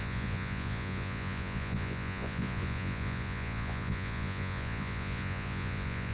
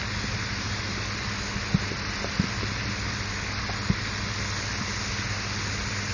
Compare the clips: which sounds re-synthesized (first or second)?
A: first